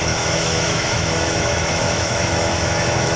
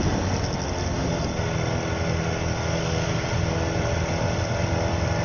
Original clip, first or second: second